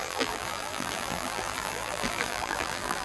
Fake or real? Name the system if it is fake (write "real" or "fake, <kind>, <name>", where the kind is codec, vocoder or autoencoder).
fake, vocoder, BigVGAN v2